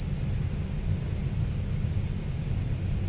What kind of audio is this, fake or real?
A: real